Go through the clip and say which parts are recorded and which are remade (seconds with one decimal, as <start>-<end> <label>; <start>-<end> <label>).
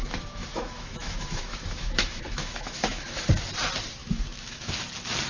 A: 0.0-3.2 remade; 3.2-4.0 recorded; 4.0-4.7 remade; 4.7-5.3 recorded